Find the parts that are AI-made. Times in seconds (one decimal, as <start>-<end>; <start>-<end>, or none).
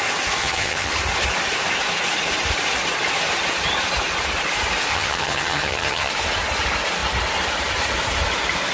0.4-0.9; 4.9-6.1